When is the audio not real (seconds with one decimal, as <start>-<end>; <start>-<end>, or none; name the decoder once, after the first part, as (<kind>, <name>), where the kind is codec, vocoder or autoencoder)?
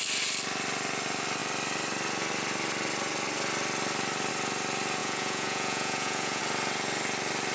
5.0-6.4 (vocoder, Vocos)